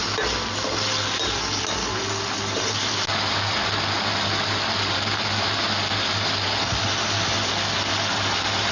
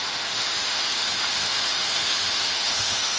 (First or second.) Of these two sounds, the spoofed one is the second